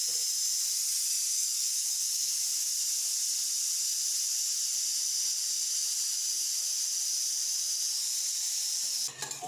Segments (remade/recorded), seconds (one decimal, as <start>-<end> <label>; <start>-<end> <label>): 0.0-1.3 recorded; 1.3-2.3 remade; 2.3-9.5 recorded